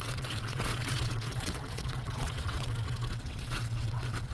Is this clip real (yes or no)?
no